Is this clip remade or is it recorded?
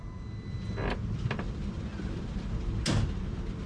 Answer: recorded